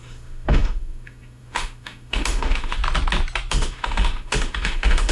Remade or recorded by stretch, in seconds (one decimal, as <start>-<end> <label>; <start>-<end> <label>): 0.0-2.8 remade; 2.8-3.5 recorded; 3.5-5.1 remade